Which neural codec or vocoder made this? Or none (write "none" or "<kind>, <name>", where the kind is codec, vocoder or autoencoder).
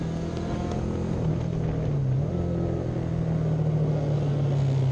none